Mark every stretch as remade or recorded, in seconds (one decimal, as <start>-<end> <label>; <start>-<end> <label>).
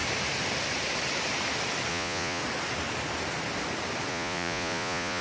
0.0-1.9 recorded; 1.9-2.4 remade; 2.4-4.1 recorded; 4.1-5.2 remade